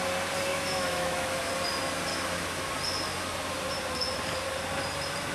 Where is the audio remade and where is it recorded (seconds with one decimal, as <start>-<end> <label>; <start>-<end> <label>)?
0.0-0.5 recorded; 0.5-1.5 remade; 1.5-2.1 recorded; 2.1-2.7 remade; 2.7-5.3 recorded